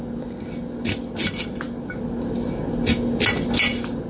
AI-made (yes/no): no